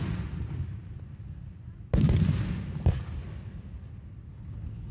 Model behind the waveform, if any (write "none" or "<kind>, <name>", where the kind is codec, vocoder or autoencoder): none